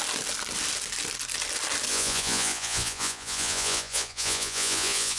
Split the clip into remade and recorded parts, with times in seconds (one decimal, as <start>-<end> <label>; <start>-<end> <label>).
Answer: 0.0-1.9 recorded; 1.9-5.2 remade